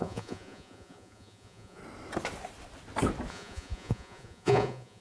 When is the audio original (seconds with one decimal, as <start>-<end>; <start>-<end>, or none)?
1.8-3.3